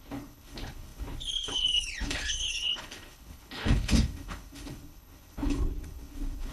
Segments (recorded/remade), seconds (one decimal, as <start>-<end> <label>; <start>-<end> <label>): 0.0-6.5 remade